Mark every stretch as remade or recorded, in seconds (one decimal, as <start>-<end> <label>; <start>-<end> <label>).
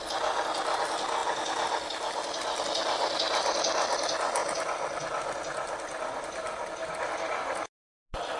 0.0-8.4 recorded